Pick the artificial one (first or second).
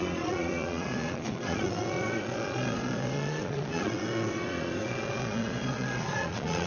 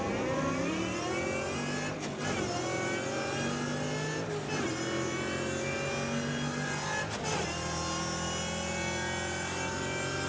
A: first